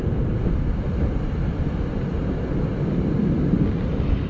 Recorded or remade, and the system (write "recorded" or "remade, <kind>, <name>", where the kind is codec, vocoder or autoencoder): remade, vocoder, BigVGAN v2